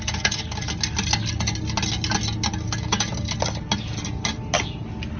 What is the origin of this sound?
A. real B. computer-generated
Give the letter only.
A